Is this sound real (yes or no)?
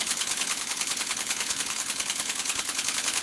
no